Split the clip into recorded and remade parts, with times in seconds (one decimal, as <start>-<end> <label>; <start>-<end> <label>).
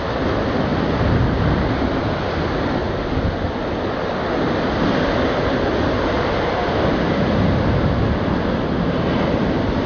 0.0-9.9 recorded